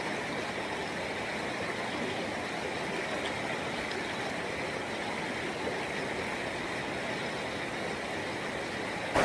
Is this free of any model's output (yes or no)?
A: yes